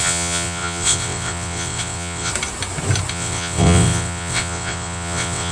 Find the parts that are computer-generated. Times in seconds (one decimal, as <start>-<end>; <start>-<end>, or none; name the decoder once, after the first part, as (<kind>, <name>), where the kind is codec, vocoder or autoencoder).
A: 0.0-2.3 (vocoder, WaveNeXt); 3.1-5.5

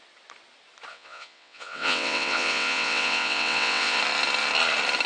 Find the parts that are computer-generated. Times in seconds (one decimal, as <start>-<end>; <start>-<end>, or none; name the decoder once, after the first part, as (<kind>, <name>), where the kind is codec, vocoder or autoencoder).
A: 0.9-4.0 (vocoder, WaveNeXt)

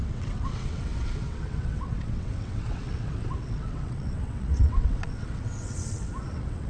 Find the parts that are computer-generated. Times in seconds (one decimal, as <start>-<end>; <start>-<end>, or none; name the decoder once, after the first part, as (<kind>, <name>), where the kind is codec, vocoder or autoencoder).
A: 0.0-6.7 (vocoder, WaveNeXt)

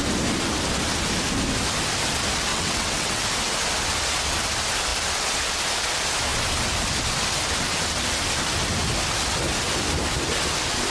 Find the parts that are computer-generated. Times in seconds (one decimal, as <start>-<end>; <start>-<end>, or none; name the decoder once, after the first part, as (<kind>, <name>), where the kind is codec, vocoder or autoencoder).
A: 2.5-3.2 (vocoder, WaveNeXt)